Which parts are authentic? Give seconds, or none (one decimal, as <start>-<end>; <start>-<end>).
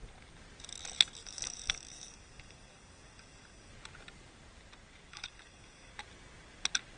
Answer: 0.0-1.2; 3.7-5.1; 5.9-7.0